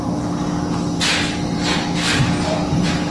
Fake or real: real